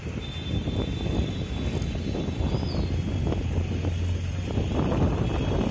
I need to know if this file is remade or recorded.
recorded